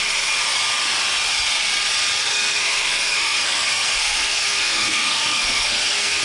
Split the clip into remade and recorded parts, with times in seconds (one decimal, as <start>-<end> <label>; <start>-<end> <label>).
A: 0.0-2.2 recorded; 2.2-6.2 remade